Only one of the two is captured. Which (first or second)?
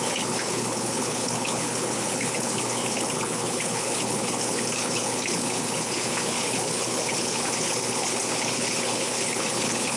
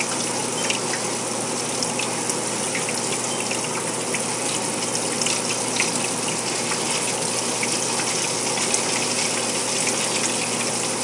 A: second